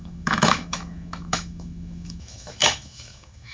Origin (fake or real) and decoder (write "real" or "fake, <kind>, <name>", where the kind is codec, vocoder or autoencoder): fake, autoencoder, DAC-VAE